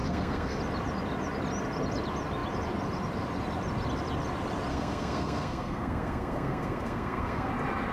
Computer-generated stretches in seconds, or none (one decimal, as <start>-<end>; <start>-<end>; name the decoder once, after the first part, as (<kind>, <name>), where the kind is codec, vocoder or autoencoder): 0.0-0.6 (codec, SNAC); 4.7-7.5